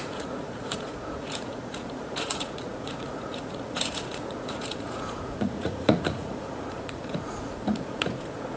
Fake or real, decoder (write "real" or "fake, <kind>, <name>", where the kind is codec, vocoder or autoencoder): fake, vocoder, Vocos